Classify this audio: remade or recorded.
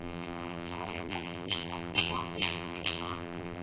remade